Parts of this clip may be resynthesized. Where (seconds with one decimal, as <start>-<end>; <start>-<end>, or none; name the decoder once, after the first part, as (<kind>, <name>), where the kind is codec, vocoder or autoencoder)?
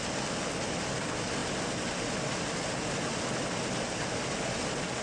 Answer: none